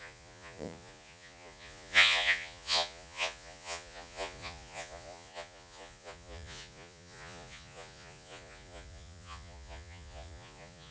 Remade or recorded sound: remade